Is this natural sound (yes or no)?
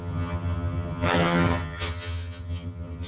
no